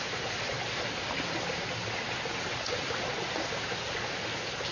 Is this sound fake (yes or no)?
no